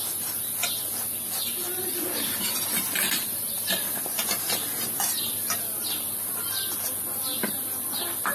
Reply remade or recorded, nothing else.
recorded